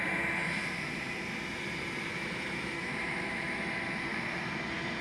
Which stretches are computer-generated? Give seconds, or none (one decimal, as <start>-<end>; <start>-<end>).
2.1-3.6